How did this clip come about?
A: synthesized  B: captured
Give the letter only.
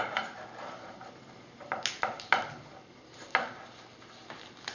B